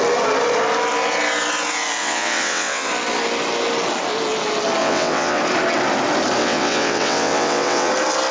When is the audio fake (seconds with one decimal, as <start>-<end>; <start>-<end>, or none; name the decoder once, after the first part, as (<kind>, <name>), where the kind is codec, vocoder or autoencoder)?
2.0-2.9 (vocoder, WaveNeXt); 4.8-5.4; 6.4-7.9